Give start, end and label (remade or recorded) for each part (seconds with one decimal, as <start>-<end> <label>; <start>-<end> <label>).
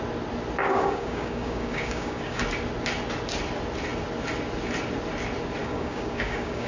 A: 0.0-0.6 recorded; 0.6-2.4 remade; 2.4-5.6 recorded; 5.6-6.7 remade